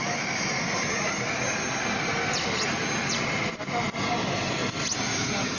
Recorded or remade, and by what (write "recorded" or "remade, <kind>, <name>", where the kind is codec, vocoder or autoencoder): recorded